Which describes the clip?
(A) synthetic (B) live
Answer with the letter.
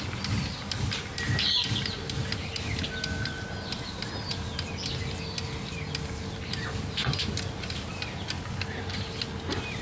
B